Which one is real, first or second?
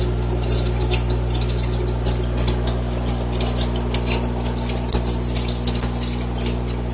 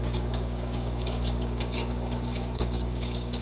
first